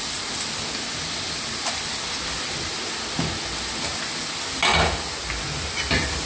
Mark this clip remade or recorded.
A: recorded